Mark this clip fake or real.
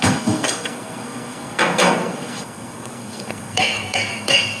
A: fake